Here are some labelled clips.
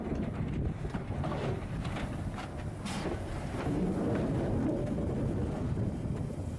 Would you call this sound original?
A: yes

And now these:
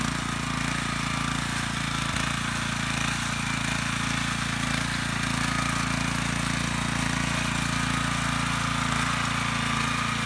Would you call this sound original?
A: yes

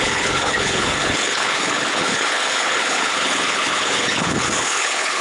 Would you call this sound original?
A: no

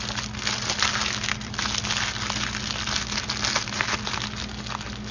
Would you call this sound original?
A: yes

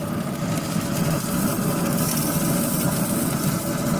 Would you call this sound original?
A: yes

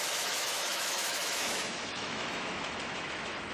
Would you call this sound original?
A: no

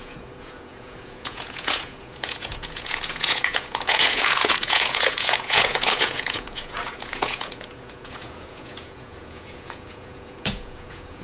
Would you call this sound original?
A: no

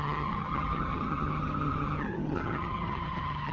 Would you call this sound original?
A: no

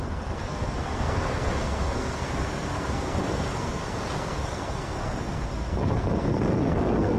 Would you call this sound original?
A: no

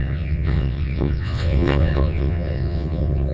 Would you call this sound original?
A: no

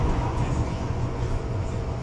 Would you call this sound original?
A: no